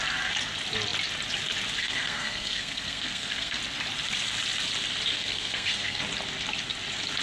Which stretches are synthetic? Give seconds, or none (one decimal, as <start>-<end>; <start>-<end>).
1.8-3.6; 5.1-6.0